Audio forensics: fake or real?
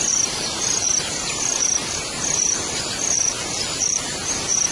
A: fake